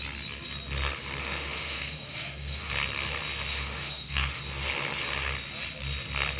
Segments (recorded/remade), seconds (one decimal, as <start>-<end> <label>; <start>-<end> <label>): 0.0-1.2 recorded; 1.2-2.7 remade; 2.7-3.5 recorded; 3.5-4.4 remade; 4.4-6.4 recorded